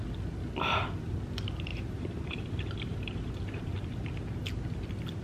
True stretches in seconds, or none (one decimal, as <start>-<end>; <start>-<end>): 0.0-1.7; 3.6-5.2